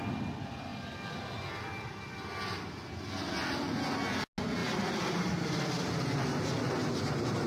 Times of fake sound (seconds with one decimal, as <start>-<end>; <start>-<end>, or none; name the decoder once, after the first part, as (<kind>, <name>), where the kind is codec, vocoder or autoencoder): 0.7-1.4 (vocoder, BigVGAN v2); 4.6-5.9